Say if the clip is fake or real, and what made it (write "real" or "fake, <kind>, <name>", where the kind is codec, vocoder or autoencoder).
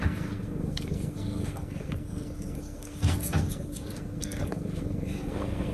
fake, codec, SNAC